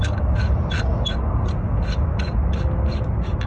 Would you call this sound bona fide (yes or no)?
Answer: yes